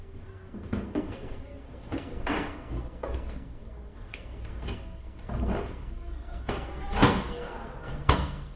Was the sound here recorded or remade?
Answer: remade